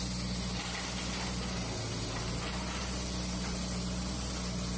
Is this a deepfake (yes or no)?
no